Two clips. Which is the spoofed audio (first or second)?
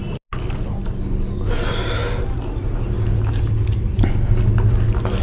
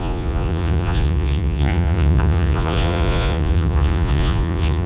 second